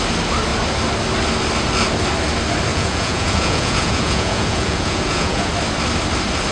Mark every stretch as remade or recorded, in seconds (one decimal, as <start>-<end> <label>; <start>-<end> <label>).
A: 0.0-2.7 recorded; 2.7-5.5 remade; 5.5-6.5 recorded